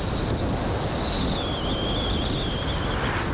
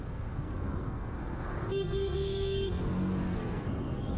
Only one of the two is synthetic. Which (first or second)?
second